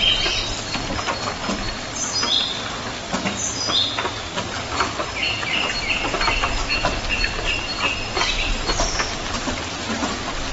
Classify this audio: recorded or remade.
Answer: recorded